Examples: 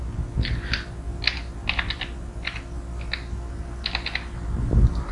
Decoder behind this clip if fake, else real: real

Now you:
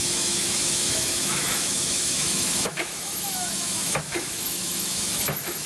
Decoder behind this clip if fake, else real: fake, autoencoder, DAC-VAE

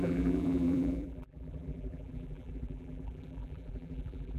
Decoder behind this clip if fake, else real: fake, vocoder, BigVGAN v2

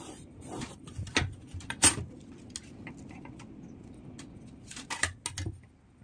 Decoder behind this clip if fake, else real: real